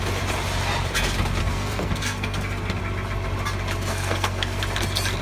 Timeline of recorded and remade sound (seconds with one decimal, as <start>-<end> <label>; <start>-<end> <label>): 0.0-1.4 recorded; 1.4-2.8 remade; 2.8-3.9 recorded; 3.9-4.6 remade; 4.6-5.2 recorded